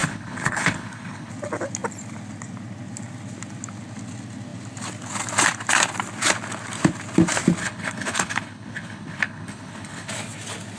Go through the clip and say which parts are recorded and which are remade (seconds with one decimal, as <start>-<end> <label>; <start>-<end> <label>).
0.0-1.3 remade; 1.3-7.6 recorded; 7.6-10.1 remade; 10.1-10.8 recorded